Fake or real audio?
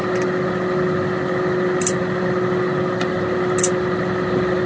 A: real